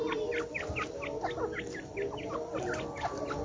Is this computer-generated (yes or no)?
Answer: no